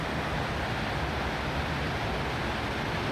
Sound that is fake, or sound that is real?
real